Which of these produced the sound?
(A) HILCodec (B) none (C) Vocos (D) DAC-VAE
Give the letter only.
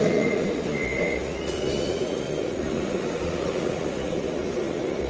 C